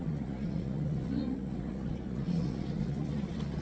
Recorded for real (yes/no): no